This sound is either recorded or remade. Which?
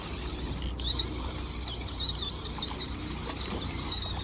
recorded